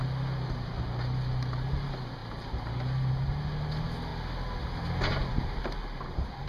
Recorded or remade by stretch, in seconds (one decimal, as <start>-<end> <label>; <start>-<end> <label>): 0.0-6.5 recorded